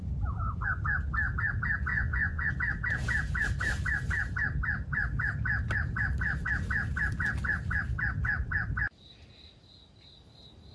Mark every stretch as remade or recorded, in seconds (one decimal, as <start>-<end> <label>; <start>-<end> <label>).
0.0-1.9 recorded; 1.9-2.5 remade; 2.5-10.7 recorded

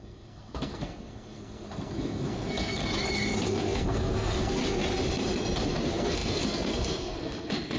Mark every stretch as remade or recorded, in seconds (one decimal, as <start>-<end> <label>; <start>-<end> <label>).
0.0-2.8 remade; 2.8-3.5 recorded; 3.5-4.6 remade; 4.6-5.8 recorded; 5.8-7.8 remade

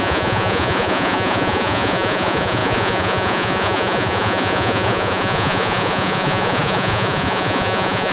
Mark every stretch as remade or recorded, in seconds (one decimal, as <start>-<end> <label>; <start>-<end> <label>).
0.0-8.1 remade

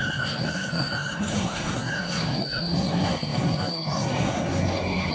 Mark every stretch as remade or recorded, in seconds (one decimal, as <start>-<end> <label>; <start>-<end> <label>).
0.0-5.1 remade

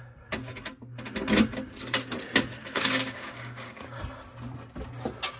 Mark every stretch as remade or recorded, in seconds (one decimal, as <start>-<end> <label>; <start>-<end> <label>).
0.0-2.6 recorded; 2.6-4.0 remade; 4.0-5.4 recorded

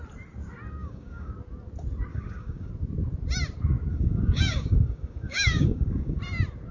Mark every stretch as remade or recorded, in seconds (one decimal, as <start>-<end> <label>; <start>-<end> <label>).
0.0-0.8 recorded; 0.8-1.3 remade; 1.3-2.1 recorded; 2.1-2.7 remade; 2.7-3.9 recorded; 3.9-6.2 remade; 6.2-6.7 recorded

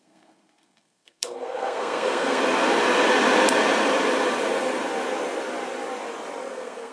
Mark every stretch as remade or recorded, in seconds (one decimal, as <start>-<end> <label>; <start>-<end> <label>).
0.0-2.4 remade; 2.4-6.5 recorded; 6.5-6.9 remade